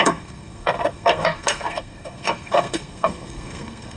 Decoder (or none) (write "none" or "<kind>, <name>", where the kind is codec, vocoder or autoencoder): codec, SNAC